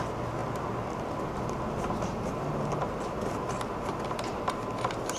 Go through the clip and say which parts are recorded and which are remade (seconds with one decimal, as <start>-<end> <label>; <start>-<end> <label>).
0.0-5.2 recorded

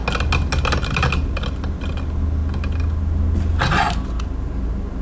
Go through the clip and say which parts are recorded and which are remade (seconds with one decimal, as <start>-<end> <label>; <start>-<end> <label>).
0.0-5.0 recorded

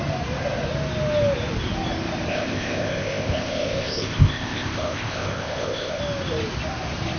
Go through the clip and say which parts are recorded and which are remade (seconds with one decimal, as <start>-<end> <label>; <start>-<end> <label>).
0.0-2.3 recorded; 2.3-6.0 remade; 6.0-7.2 recorded